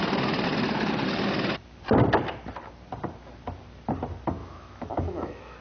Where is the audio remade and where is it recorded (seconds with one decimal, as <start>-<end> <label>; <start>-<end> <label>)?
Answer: 0.0-4.4 recorded; 4.4-5.6 remade